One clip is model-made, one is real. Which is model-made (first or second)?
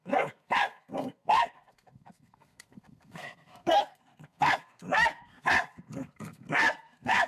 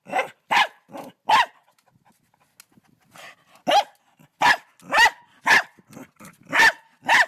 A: first